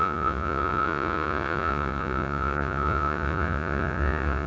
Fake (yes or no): yes